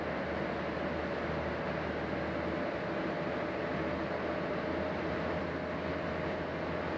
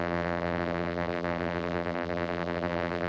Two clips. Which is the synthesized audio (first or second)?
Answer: second